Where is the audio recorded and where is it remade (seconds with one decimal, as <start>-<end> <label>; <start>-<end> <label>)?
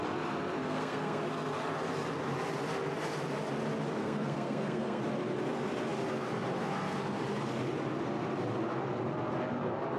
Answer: 0.0-0.6 recorded; 0.6-1.2 remade; 1.2-4.0 recorded; 4.0-5.0 remade; 5.0-10.0 recorded